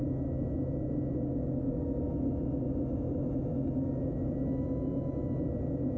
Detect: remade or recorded recorded